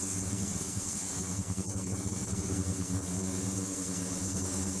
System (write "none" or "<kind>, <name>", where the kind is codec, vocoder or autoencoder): codec, SNAC